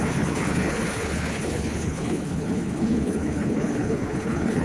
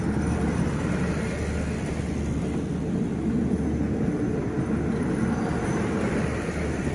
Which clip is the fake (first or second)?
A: first